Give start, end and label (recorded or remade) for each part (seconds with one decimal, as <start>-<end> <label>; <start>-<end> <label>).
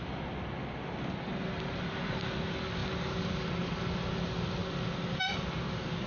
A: 0.0-6.1 recorded